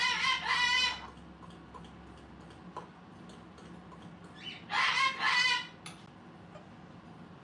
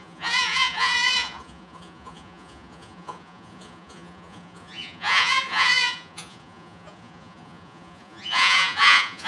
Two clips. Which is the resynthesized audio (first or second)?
second